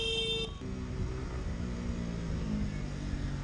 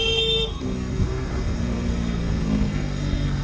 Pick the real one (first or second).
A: first